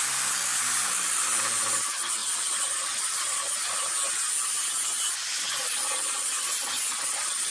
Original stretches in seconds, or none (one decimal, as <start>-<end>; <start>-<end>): 0.0-0.5; 1.8-2.2; 6.7-7.5